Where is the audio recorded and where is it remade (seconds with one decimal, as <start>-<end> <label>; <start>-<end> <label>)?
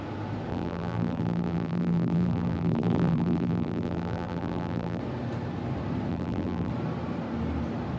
0.0-0.5 recorded; 0.5-5.0 remade; 5.0-6.1 recorded; 6.1-6.7 remade; 6.7-8.0 recorded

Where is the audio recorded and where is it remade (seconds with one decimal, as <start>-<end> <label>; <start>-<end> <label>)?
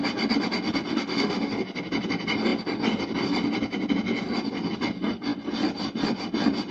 0.0-0.9 recorded; 0.9-1.5 remade; 1.5-6.7 recorded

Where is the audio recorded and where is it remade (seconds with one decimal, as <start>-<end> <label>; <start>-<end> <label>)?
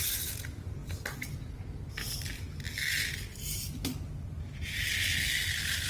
0.0-3.3 recorded; 3.3-4.9 remade; 4.9-5.9 recorded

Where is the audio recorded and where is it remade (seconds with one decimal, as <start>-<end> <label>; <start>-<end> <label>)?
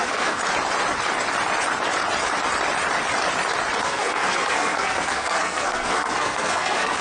0.0-0.4 remade; 0.4-3.8 recorded; 3.8-7.0 remade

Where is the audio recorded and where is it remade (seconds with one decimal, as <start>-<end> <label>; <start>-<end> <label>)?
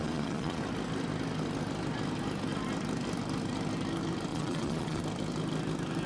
0.0-0.6 remade; 0.6-4.3 recorded; 4.3-5.0 remade; 5.0-6.1 recorded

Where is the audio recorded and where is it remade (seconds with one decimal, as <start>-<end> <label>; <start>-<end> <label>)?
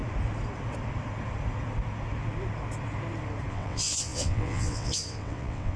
0.0-3.5 recorded; 3.5-5.8 remade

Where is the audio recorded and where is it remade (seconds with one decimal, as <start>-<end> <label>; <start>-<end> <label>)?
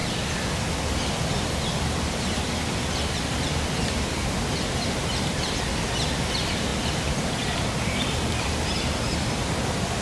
0.0-10.0 recorded